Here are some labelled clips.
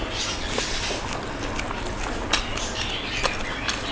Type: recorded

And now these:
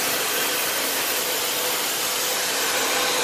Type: remade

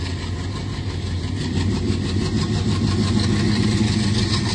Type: recorded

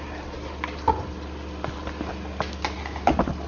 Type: recorded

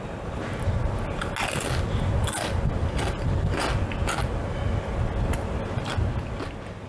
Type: recorded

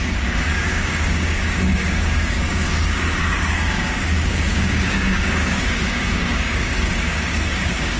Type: remade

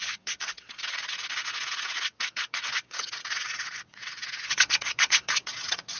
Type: remade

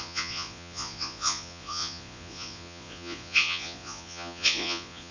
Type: remade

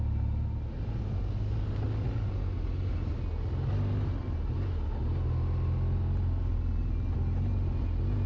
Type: recorded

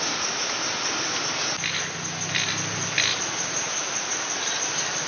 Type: recorded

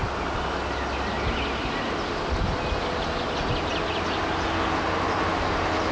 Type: recorded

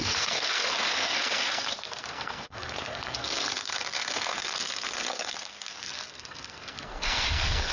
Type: remade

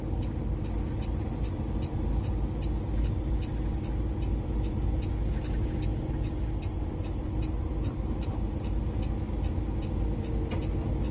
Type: recorded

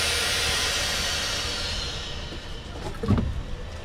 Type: remade